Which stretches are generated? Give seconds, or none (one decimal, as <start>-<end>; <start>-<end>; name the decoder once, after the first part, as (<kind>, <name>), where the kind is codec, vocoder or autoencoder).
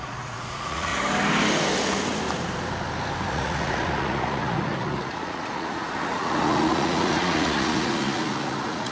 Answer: 0.0-0.9 (vocoder, Vocos); 3.3-8.9